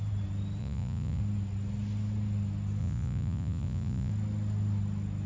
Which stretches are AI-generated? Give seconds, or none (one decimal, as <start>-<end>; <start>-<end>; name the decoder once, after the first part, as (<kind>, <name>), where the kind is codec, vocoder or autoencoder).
0.6-1.2 (vocoder, Vocos); 2.8-4.1